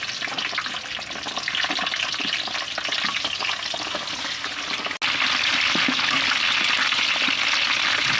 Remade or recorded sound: recorded